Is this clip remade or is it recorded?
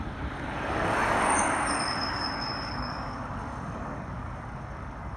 remade